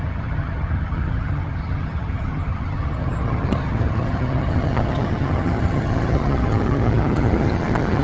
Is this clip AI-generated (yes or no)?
yes